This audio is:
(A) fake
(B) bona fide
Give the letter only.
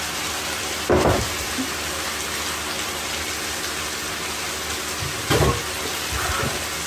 B